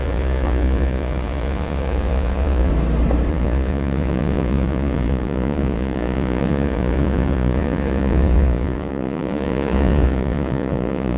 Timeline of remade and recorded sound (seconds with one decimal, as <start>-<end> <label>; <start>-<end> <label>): 0.0-2.7 remade; 2.7-3.3 recorded; 3.3-11.2 remade

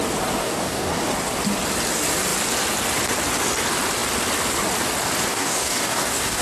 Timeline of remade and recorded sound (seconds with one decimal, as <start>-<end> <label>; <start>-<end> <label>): 0.0-0.4 recorded; 0.4-1.0 remade; 1.0-5.3 recorded; 5.3-6.4 remade

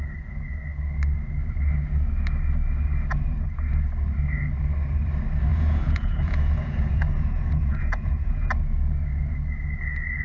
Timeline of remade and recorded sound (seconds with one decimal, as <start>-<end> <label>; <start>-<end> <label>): 0.0-5.5 recorded; 5.5-8.5 remade; 8.5-10.2 recorded

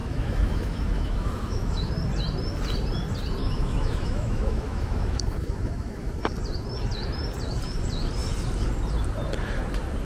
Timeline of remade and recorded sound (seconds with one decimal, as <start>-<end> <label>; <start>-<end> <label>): 0.0-1.9 remade; 1.9-3.4 recorded; 3.4-6.1 remade; 6.1-10.0 recorded

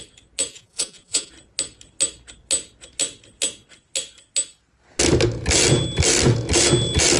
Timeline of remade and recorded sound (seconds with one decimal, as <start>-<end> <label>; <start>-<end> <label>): 0.0-0.5 recorded; 0.5-1.3 remade; 1.3-7.2 recorded

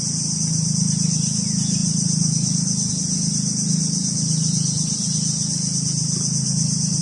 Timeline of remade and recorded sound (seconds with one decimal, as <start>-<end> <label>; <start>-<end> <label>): 0.0-7.0 recorded

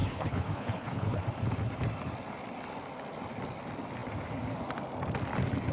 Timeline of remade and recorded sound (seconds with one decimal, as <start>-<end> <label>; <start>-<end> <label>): 0.0-1.2 remade; 1.2-5.7 recorded

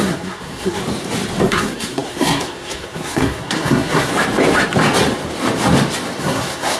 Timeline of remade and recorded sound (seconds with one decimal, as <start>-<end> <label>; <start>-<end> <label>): 0.0-0.8 remade; 0.8-1.5 recorded; 1.5-4.1 remade; 4.1-6.2 recorded; 6.2-6.8 remade